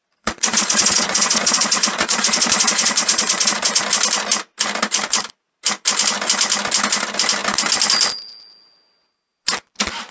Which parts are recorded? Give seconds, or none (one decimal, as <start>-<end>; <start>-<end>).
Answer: 3.8-10.1